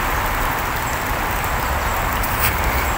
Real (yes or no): yes